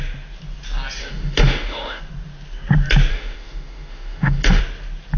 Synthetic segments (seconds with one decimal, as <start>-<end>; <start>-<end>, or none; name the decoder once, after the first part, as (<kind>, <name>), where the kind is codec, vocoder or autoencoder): 1.0-2.0 (autoencoder, DAC-VAE); 3.1-4.6